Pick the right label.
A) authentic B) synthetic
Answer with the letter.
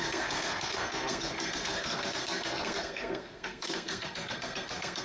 B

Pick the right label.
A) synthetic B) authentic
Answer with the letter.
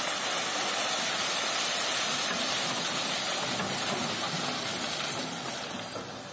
B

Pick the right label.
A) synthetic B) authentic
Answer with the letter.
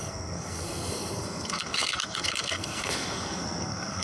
A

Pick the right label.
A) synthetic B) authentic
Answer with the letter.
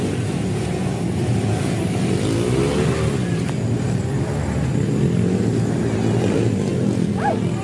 B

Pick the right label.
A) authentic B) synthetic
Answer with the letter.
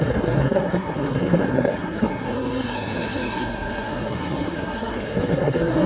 B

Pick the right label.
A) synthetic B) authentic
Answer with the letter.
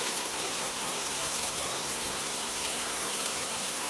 A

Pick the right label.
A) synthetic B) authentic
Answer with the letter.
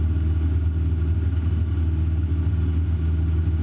B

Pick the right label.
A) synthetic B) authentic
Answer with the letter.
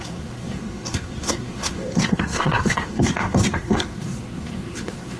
A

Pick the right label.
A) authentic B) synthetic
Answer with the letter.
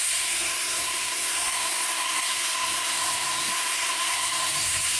B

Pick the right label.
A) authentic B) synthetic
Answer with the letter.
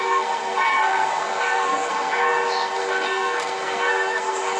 B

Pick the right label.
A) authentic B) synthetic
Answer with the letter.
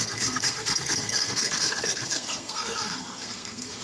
B